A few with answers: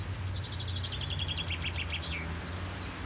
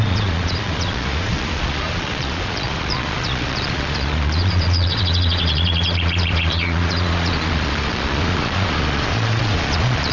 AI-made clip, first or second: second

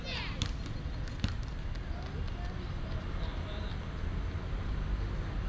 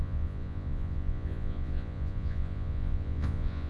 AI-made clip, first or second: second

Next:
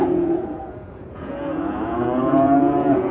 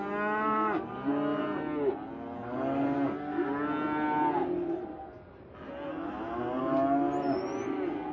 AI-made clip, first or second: first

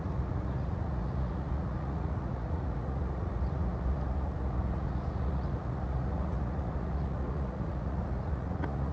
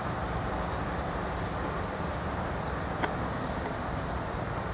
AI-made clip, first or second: first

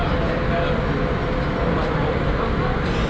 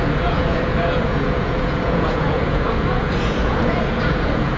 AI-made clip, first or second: second